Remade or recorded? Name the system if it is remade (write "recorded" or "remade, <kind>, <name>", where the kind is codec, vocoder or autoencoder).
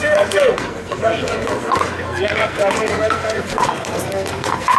remade, codec, SNAC